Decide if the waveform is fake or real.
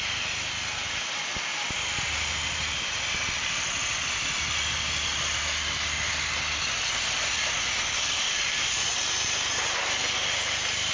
real